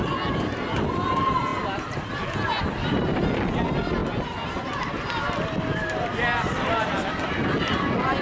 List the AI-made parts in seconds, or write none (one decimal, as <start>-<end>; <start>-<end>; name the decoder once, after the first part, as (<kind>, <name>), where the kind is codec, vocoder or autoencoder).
2.8-3.3 (vocoder, BigVGAN v2)